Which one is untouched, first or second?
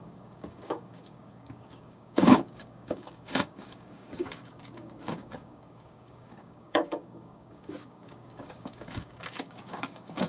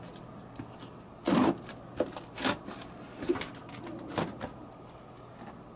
second